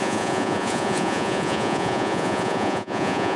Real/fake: fake